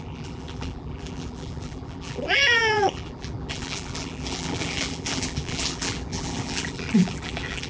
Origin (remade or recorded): remade